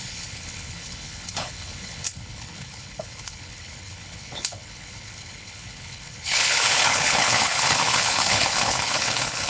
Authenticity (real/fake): fake